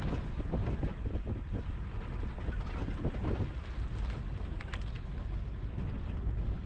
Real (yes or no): yes